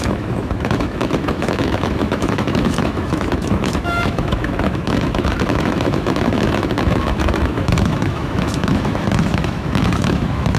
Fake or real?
fake